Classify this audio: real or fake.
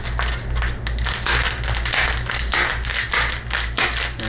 real